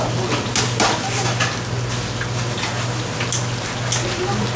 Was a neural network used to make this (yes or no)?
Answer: no